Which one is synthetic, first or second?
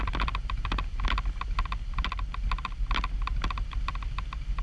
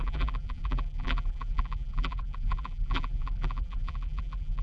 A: second